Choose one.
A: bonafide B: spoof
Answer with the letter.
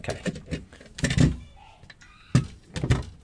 A